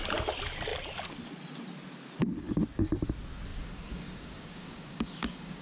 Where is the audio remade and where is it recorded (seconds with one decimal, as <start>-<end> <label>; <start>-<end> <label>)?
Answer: 0.0-3.5 recorded; 3.5-5.6 remade